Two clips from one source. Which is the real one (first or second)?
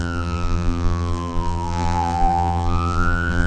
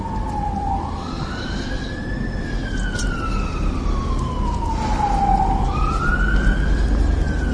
second